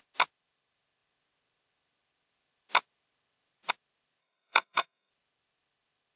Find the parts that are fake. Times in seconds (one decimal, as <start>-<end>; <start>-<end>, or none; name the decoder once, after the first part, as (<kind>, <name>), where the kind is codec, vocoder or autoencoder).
4.2-5.1 (codec, SNAC)

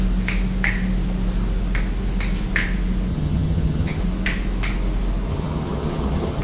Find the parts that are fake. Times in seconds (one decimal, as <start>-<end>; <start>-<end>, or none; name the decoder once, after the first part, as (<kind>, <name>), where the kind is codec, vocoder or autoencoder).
3.1-4.0 (vocoder, HiFi-GAN); 5.3-6.4